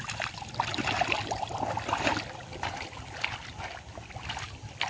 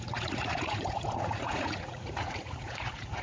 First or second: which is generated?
second